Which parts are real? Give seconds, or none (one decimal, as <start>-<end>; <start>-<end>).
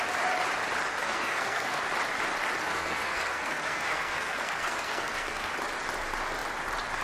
0.0-0.9; 1.8-2.6; 5.5-7.0